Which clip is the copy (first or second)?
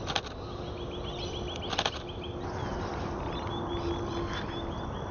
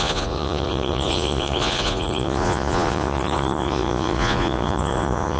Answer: second